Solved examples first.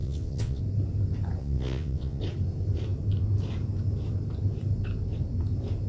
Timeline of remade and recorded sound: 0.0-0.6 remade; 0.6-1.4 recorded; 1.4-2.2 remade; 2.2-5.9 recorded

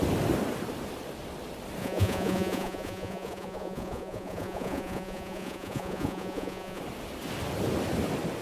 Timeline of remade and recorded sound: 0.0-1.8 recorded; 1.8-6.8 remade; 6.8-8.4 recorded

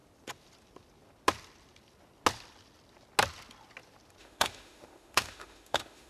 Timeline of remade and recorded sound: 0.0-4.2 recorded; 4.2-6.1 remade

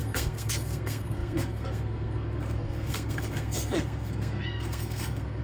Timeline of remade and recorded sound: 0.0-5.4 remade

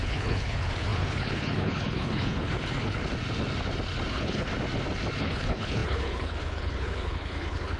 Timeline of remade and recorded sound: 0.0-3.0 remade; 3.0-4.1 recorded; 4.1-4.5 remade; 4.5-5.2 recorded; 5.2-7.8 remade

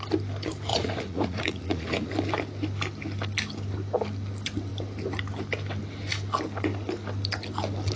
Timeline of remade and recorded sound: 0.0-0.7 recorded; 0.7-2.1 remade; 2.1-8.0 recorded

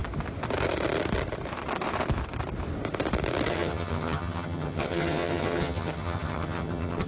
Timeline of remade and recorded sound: 0.0-3.5 recorded; 3.5-7.1 remade

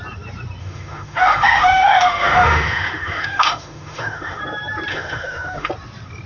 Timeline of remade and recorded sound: 0.0-0.6 recorded; 0.6-4.4 remade; 4.4-4.9 recorded; 4.9-5.7 remade; 5.7-6.3 recorded